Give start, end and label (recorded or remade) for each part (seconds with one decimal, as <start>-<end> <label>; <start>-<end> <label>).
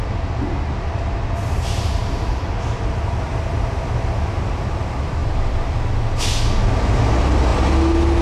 0.0-2.0 recorded; 2.0-3.3 remade; 3.3-5.2 recorded; 5.2-5.8 remade; 5.8-8.2 recorded